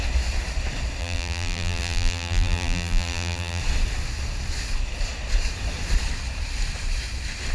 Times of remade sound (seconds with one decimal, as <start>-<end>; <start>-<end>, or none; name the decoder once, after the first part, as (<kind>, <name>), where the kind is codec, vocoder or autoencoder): 1.0-3.6 (vocoder, BigVGAN v2)